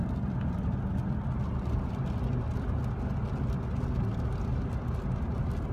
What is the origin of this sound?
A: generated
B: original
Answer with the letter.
B